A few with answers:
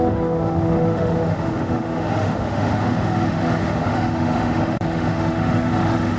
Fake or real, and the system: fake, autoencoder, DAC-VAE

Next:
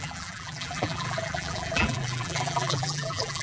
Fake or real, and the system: fake, vocoder, BigVGAN v2